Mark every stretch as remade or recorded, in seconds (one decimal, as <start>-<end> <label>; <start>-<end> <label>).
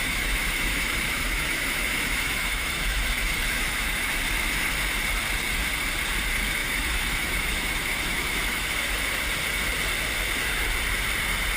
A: 0.0-4.1 remade; 4.1-6.6 recorded; 6.6-9.2 remade; 9.2-11.6 recorded